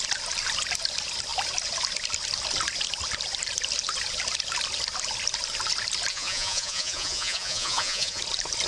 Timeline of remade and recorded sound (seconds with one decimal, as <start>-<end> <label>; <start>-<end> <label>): 0.0-6.1 recorded; 6.1-8.2 remade; 8.2-8.7 recorded